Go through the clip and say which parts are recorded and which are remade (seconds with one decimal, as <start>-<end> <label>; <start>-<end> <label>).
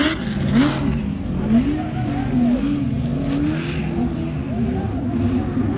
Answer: 0.0-5.8 recorded